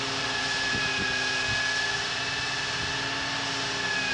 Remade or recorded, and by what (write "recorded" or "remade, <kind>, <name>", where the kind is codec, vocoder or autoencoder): recorded